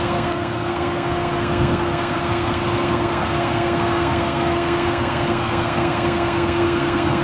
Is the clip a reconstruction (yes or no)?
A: yes